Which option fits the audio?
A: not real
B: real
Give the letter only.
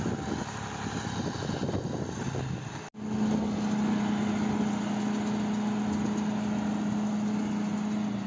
B